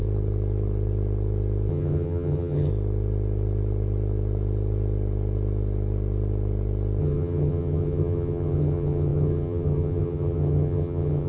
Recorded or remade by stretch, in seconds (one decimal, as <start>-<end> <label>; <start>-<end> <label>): 0.0-1.7 recorded; 1.7-2.7 remade; 2.7-7.0 recorded; 7.0-11.3 remade